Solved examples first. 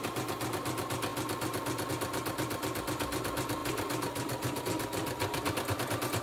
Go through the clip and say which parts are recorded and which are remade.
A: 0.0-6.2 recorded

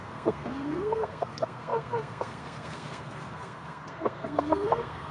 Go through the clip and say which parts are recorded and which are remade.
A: 0.0-5.1 remade

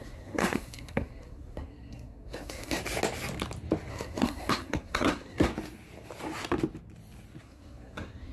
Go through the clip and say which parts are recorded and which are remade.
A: 0.0-2.8 remade; 2.8-3.9 recorded; 3.9-5.5 remade; 5.5-7.4 recorded; 7.4-8.3 remade

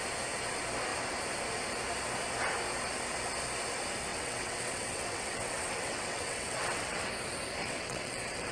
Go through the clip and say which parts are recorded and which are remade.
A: 0.0-4.1 recorded; 4.1-7.1 remade; 7.1-7.6 recorded; 7.6-8.5 remade

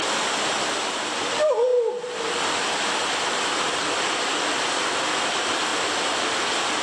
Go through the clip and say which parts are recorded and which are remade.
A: 0.0-6.8 recorded

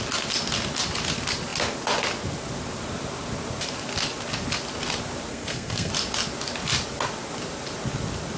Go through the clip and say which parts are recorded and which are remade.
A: 0.0-5.3 recorded; 5.3-5.9 remade; 5.9-8.4 recorded

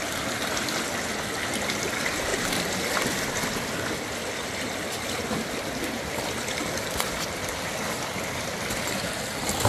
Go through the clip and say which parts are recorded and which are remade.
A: 0.0-9.7 recorded